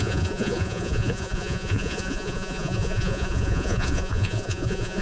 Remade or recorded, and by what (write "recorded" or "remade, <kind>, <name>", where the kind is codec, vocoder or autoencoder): remade, vocoder, Vocos